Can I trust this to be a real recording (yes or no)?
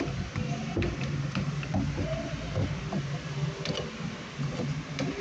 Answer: no